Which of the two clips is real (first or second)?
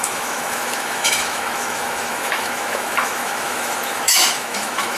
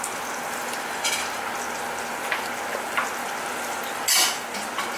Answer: second